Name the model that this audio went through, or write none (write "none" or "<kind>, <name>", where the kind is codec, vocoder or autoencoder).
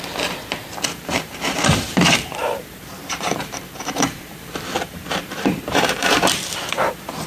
vocoder, BigVGAN v2